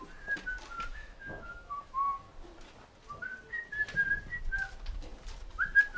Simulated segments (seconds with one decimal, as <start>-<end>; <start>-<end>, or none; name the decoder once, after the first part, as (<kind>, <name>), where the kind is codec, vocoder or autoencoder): 0.9-1.9 (autoencoder, DAC-VAE)